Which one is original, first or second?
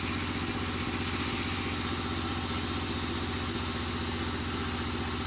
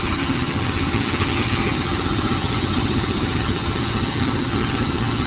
first